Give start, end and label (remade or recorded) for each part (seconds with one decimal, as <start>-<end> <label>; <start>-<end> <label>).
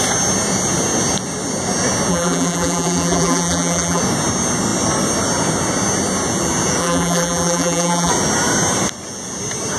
0.0-2.1 recorded; 2.1-4.0 remade; 4.0-6.8 recorded; 6.8-8.1 remade; 8.1-9.8 recorded